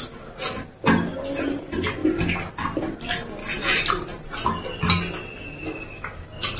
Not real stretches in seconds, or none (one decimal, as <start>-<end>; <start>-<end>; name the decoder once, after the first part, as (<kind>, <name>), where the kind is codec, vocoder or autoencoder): 2.0-2.8 (vocoder, BigVGAN v2); 3.4-4.5